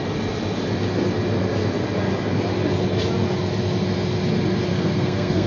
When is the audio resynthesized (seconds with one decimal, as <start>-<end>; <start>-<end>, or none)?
4.7-5.5